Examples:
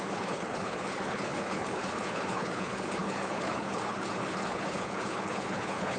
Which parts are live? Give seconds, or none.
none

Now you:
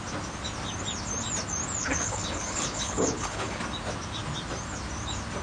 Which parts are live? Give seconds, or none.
0.0-1.8; 3.6-5.4

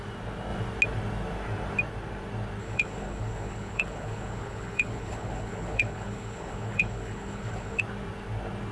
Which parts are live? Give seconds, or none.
0.0-2.6; 7.8-8.7

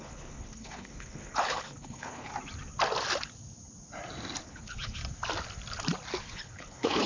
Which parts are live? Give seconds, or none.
2.3-4.4; 5.0-6.2

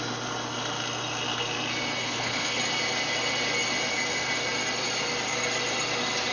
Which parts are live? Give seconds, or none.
0.0-2.0; 2.6-6.3

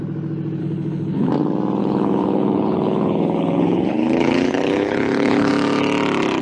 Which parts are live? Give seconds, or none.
0.0-0.6; 1.3-1.8; 5.5-6.4

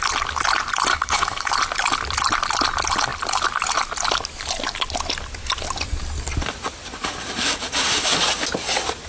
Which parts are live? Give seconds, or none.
0.0-0.9; 1.5-9.1